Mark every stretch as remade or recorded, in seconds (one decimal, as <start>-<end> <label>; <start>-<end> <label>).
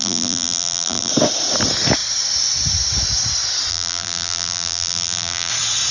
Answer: 0.0-1.1 remade; 1.1-3.7 recorded; 3.7-5.5 remade; 5.5-5.9 recorded